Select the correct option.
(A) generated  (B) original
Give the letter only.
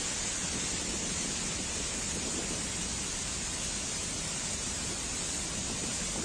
B